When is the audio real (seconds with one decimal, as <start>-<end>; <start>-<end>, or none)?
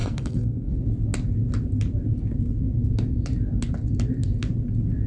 0.7-5.1